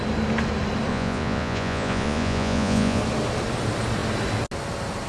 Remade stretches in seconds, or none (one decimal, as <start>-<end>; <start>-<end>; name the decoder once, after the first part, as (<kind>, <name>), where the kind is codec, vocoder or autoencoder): 0.9-3.0 (vocoder, Vocos)